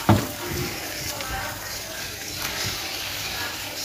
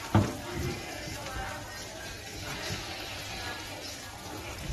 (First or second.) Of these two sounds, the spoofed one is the first